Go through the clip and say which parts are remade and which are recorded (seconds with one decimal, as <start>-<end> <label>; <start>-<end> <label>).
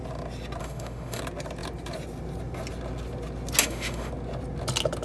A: 0.0-0.6 recorded; 0.6-1.2 remade; 1.2-3.6 recorded; 3.6-4.1 remade; 4.1-5.0 recorded